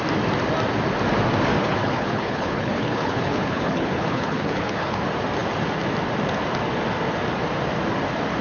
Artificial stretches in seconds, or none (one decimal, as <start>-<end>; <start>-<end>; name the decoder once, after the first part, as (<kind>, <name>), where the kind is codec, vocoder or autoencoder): 1.6-5.0 (codec, HILCodec)